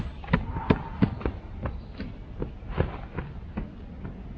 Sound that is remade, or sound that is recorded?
recorded